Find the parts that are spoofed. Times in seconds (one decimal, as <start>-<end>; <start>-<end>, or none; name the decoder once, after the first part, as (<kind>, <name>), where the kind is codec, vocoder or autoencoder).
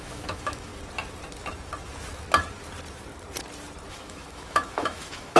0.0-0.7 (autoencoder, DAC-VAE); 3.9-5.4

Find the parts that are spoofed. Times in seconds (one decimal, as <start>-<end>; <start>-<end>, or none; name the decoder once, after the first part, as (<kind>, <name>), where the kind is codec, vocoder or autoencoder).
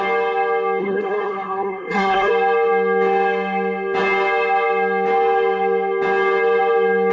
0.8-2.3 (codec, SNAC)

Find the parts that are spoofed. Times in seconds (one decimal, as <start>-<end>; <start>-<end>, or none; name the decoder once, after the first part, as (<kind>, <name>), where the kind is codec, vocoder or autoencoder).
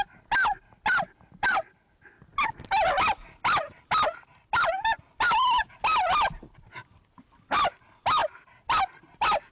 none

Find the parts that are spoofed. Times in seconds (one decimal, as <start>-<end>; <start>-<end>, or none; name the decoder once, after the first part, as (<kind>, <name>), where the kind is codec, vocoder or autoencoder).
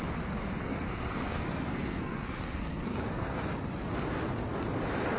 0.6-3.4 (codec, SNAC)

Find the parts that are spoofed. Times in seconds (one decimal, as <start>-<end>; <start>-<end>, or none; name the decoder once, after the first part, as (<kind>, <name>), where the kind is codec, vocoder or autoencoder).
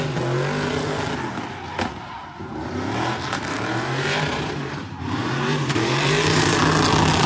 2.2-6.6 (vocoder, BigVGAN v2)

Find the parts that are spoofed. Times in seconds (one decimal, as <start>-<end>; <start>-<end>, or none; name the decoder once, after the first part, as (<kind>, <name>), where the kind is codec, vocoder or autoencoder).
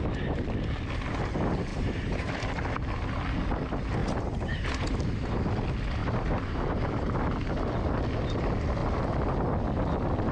1.7-2.3 (vocoder, BigVGAN v2); 4.0-5.3; 6.0-7.1